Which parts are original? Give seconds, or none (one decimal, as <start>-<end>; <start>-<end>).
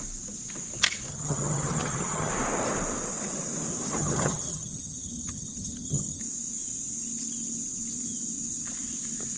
0.0-1.1; 2.3-4.0; 6.2-9.4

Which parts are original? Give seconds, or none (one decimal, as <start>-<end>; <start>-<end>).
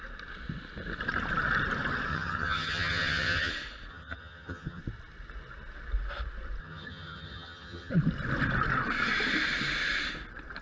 0.0-2.1; 3.5-3.9; 4.8-6.6; 7.9-10.6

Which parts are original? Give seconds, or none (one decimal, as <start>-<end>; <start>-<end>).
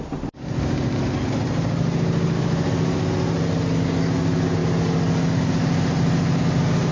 0.0-6.9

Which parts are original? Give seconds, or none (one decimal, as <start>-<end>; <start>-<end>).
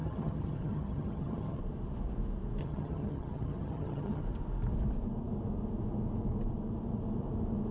1.6-2.6; 4.2-7.7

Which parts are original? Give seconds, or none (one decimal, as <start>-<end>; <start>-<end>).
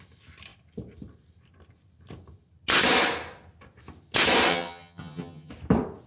0.0-4.5; 5.5-6.1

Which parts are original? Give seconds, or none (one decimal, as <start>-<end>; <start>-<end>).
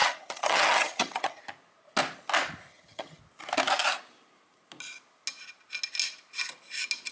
1.4-2.7; 3.2-7.1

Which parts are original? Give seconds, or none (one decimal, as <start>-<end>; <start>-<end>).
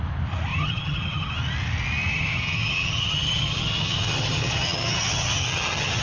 0.0-0.5; 1.3-2.1